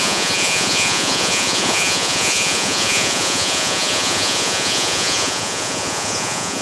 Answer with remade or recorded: remade